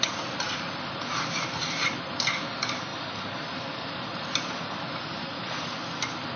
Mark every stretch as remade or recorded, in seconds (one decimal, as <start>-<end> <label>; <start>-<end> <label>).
0.0-6.4 recorded